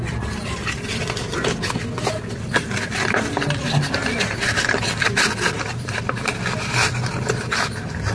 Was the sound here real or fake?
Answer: real